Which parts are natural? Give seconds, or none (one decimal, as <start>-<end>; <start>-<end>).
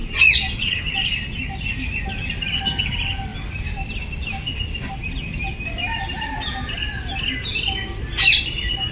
0.8-8.9